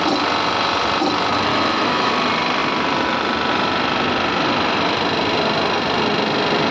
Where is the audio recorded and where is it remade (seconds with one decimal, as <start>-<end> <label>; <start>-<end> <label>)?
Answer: 0.0-1.5 recorded; 1.5-2.1 remade; 2.1-6.7 recorded